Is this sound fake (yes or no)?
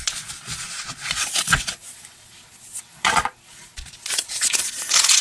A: yes